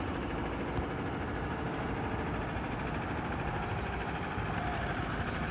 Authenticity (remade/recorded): recorded